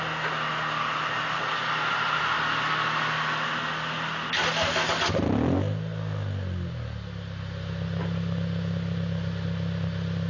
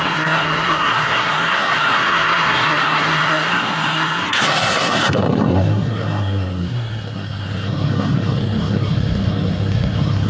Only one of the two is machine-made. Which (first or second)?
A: second